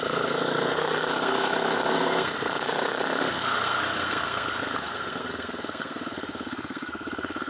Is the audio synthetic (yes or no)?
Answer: yes